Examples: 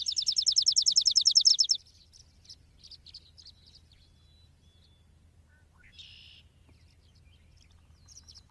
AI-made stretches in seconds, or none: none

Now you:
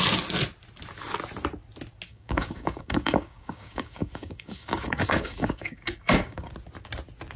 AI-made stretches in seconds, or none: 2.1-6.5 (codec, DAC)

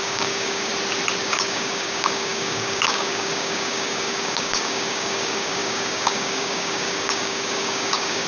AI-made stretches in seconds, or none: 0.0-0.7 (codec, DAC); 1.2-8.3

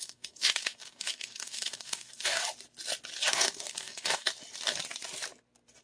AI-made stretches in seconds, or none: 0.0-2.4 (codec, DAC); 3.3-4.3

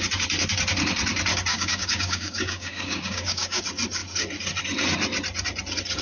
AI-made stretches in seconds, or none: 1.5-3.6 (codec, DAC)

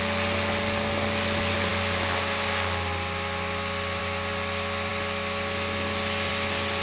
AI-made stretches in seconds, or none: none

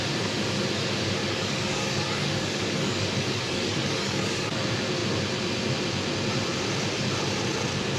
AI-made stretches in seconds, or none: 1.2-4.6 (codec, DAC)